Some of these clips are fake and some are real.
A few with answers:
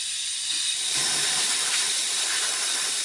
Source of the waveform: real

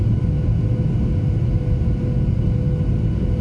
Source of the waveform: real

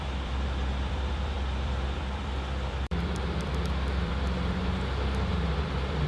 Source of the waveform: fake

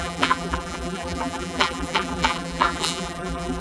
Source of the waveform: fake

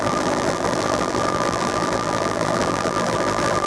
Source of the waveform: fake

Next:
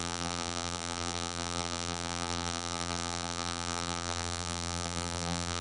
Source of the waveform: fake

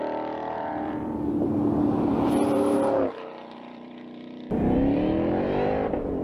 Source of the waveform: fake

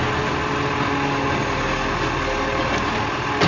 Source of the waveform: real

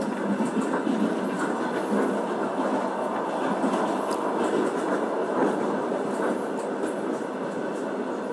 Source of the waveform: real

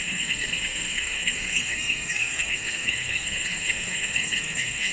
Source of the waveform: fake